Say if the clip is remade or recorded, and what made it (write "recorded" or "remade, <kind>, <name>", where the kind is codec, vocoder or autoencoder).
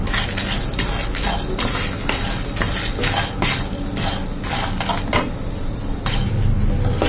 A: recorded